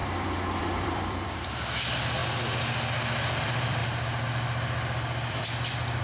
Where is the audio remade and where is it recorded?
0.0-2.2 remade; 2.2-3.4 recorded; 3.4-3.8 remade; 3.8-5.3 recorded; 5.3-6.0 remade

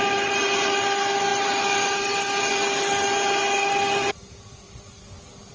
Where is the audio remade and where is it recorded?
0.0-5.5 recorded

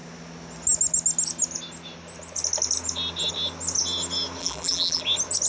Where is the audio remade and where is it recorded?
0.0-4.4 recorded; 4.4-5.0 remade; 5.0-5.5 recorded

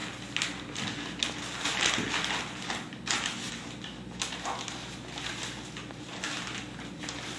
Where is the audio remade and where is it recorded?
0.0-7.4 recorded

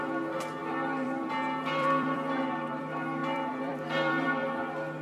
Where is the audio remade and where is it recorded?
0.0-0.6 recorded; 0.6-1.3 remade; 1.3-1.8 recorded; 1.8-2.8 remade; 2.8-3.2 recorded; 3.2-4.5 remade; 4.5-5.0 recorded